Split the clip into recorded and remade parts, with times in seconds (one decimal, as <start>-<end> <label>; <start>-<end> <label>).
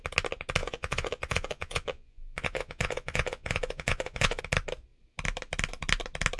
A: 0.0-0.6 recorded; 0.6-4.4 remade; 4.4-6.4 recorded